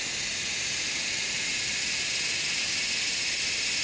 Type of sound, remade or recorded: recorded